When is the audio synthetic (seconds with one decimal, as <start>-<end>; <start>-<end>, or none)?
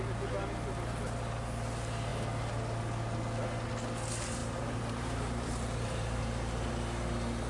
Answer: 4.4-6.7